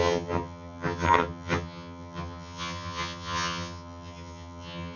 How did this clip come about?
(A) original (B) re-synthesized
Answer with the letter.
B